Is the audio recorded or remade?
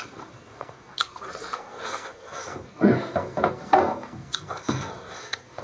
remade